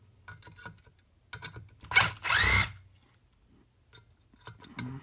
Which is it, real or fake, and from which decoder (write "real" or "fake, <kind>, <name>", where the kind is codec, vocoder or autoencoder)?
real